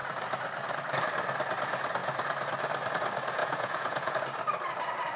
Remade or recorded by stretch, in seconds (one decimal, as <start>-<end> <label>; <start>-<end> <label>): 0.0-3.4 recorded; 3.4-4.1 remade; 4.1-5.2 recorded